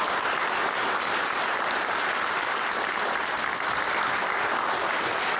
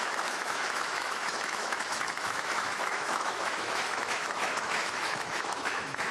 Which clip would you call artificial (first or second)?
second